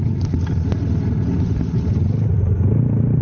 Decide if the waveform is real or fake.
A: real